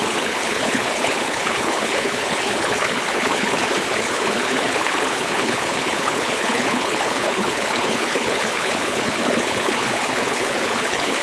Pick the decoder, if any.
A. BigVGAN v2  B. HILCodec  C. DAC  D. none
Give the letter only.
B